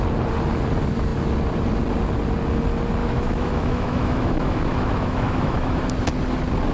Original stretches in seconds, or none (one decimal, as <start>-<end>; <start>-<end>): 0.0-3.0; 5.8-6.7